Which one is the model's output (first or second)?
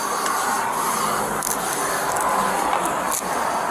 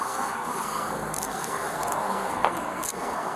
second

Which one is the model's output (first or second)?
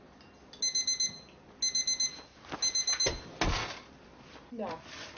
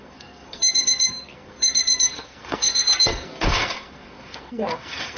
second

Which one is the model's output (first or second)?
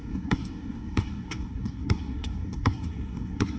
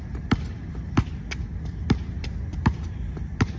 first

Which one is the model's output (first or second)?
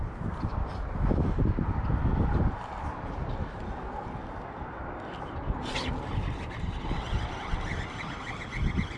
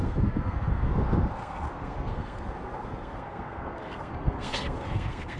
second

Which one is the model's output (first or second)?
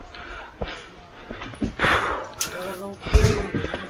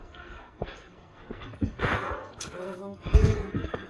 second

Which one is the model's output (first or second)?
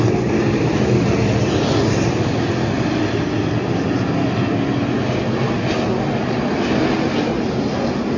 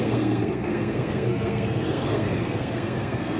second